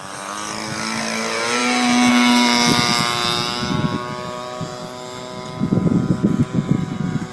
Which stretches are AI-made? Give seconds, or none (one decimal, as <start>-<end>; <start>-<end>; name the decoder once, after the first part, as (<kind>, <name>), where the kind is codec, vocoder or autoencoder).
none

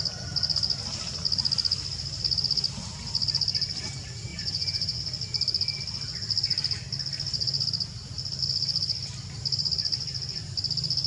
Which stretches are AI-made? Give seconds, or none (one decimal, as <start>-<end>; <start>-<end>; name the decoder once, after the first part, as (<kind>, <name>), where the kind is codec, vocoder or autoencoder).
4.3-5.0 (vocoder, Vocos)

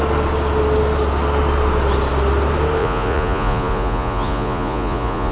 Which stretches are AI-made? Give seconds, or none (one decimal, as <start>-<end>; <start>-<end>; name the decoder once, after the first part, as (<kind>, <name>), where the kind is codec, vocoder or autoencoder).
2.8-5.3 (vocoder, Vocos)

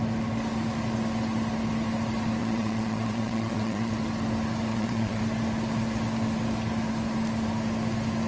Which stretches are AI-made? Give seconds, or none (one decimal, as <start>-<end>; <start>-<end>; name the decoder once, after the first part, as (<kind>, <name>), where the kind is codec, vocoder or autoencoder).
2.4-3.9 (vocoder, Vocos); 4.7-5.2